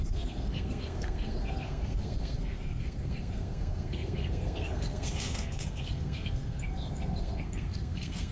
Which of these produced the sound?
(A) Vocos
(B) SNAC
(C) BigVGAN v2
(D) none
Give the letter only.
B